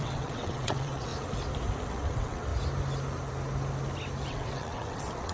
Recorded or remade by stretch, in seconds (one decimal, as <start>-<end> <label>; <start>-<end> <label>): 0.0-1.1 remade; 1.1-1.9 recorded; 1.9-2.5 remade; 2.5-4.3 recorded; 4.3-5.3 remade